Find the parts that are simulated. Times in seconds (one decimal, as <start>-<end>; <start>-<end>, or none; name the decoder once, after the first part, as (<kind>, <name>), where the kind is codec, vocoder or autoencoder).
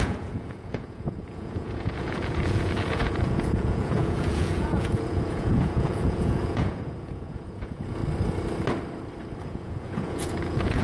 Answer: 0.0-8.0 (vocoder, Vocos); 9.4-10.8